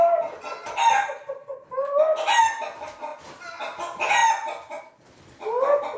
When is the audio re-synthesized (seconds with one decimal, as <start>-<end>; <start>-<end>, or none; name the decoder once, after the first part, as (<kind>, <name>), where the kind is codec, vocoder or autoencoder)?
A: none